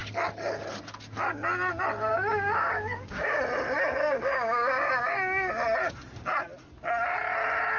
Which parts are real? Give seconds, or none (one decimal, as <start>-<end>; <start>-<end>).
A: 0.0-2.1; 3.4-4.0; 5.5-7.8